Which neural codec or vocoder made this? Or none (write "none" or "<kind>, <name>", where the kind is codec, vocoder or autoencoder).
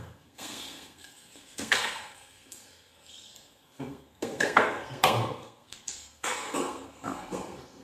codec, SNAC